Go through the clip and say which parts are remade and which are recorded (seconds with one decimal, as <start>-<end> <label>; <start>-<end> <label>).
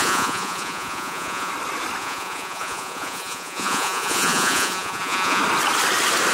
0.0-1.5 remade; 1.5-2.0 recorded; 2.0-5.4 remade; 5.4-6.3 recorded